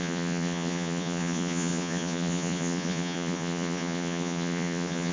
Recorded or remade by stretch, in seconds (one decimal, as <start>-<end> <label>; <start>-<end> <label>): 0.0-5.1 remade